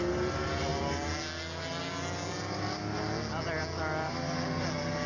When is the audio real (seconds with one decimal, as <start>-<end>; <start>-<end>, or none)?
0.0-5.1